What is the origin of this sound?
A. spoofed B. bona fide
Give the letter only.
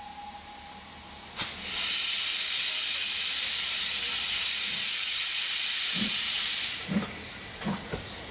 B